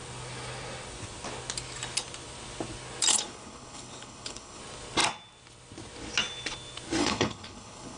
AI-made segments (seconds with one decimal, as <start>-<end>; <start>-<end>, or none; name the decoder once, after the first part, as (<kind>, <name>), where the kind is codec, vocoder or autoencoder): 3.1-4.6 (codec, HILCodec); 7.0-8.0

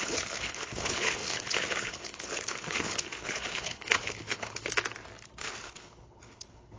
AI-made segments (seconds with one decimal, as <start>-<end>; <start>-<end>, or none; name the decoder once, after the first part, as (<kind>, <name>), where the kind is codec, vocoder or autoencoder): 0.0-4.7 (codec, HILCodec); 5.4-6.8

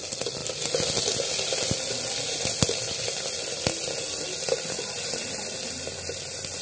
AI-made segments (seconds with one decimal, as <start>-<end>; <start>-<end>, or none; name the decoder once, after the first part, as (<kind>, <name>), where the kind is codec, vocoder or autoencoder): none